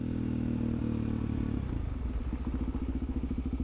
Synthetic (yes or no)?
no